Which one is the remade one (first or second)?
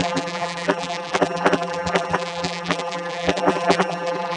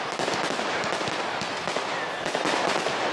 first